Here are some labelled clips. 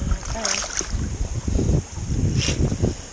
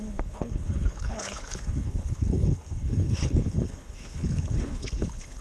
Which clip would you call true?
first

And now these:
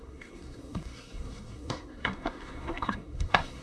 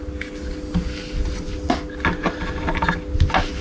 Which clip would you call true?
second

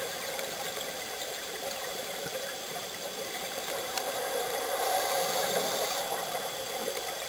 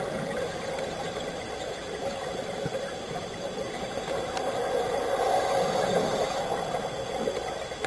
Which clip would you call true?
second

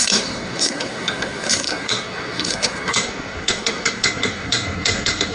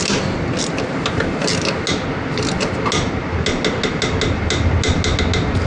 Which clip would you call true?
second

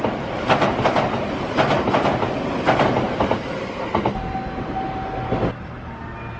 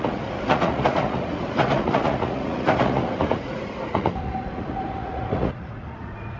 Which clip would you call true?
first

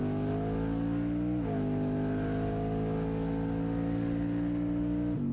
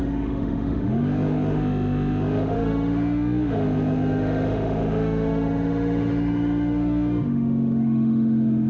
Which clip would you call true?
first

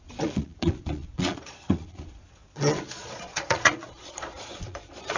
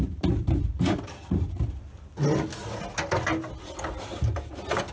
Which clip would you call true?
second